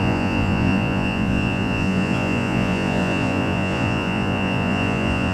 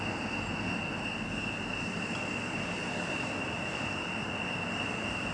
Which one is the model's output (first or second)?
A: first